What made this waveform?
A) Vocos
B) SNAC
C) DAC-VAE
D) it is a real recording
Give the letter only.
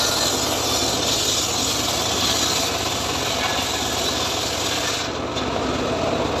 D